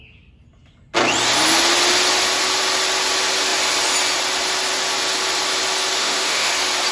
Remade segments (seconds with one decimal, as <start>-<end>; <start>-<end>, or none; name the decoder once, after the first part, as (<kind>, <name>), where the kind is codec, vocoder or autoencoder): 6.0-6.5 (autoencoder, DAC-VAE)